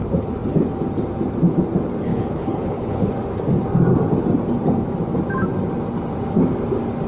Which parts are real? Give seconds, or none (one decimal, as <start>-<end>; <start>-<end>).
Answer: 0.0-2.1; 3.1-7.1

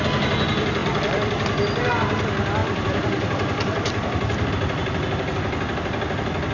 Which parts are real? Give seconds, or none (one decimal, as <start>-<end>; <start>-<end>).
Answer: 0.0-2.6; 4.5-6.5